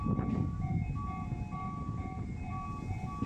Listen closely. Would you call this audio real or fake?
real